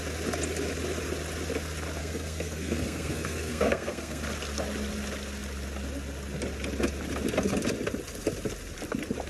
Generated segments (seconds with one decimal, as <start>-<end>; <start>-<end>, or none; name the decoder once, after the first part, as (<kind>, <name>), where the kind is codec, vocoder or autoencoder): 2.0-4.2 (codec, SNAC)